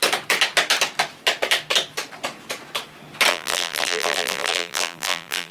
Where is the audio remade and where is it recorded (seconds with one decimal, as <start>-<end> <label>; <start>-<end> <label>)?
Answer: 0.0-3.3 recorded; 3.3-5.5 remade